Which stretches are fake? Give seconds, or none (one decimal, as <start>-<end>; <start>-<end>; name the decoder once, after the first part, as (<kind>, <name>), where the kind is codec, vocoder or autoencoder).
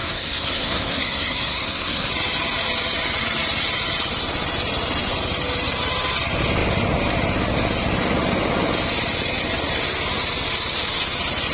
0.0-2.1 (codec, SNAC)